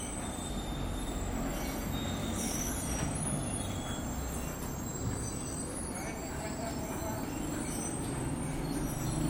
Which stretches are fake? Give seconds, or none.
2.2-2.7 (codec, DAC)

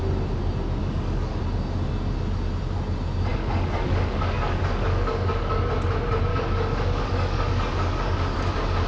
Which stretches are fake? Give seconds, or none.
0.8-1.4 (codec, DAC); 3.3-5.7; 6.3-8.5